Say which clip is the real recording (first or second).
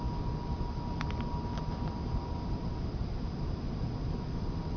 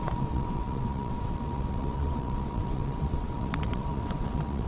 first